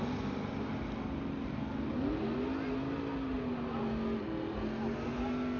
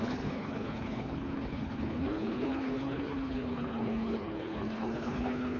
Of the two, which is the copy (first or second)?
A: second